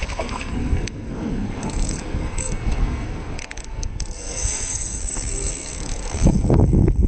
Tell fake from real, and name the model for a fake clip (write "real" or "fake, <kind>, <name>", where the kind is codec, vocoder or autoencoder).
fake, codec, SNAC